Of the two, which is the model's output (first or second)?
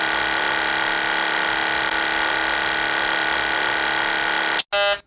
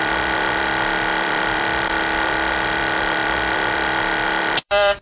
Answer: second